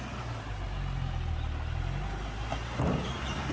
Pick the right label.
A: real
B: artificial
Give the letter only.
A